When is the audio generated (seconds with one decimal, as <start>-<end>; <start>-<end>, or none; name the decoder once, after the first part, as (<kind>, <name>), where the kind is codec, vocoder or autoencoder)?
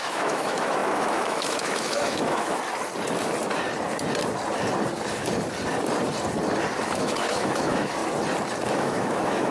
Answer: 0.0-2.6 (autoencoder, DAC-VAE); 6.8-8.0; 8.7-9.5